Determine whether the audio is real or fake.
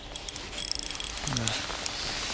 real